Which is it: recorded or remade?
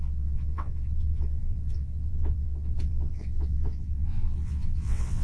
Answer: remade